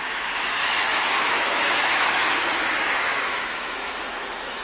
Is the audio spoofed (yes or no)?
yes